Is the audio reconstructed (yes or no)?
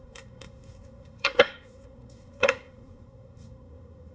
yes